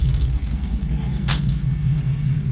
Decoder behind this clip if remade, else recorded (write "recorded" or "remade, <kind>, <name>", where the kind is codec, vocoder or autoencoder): remade, codec, SNAC